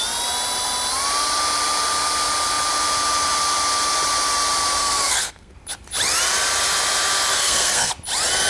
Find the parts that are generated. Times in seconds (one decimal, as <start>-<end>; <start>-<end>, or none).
4.8-5.6; 7.3-7.9